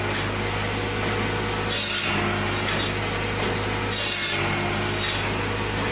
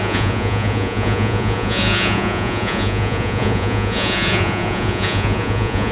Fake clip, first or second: second